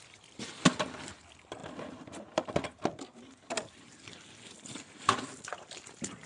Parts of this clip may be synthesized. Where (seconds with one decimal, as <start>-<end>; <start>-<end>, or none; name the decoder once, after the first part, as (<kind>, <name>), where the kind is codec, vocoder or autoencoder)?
none